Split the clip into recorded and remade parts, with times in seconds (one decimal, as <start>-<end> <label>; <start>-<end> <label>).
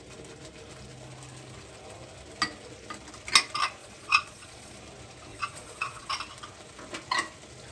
0.0-3.8 recorded; 3.8-4.8 remade; 4.8-5.3 recorded; 5.3-6.1 remade; 6.1-7.7 recorded